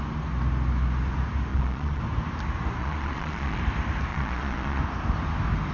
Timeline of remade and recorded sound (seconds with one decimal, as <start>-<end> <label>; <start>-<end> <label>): 0.0-1.5 recorded; 1.5-2.0 remade; 2.0-2.8 recorded; 2.8-3.6 remade; 3.6-4.1 recorded; 4.1-4.8 remade; 4.8-5.7 recorded